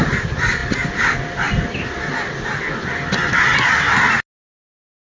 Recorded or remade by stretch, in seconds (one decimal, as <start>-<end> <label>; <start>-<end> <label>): 0.0-5.0 recorded